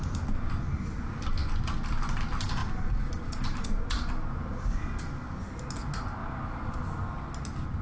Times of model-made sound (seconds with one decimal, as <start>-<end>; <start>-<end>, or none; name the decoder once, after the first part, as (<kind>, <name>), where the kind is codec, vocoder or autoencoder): none